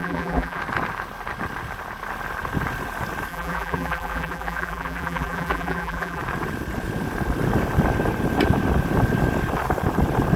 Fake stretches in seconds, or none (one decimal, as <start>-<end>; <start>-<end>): 0.0-0.6; 3.3-6.2